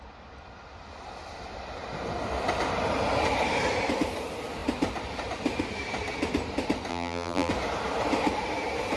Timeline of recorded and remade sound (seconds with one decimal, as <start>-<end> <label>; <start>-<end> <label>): 0.0-6.9 recorded; 6.9-7.5 remade; 7.5-9.0 recorded